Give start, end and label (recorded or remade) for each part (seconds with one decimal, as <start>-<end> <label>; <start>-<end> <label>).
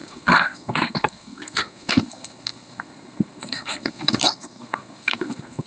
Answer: 0.0-5.7 remade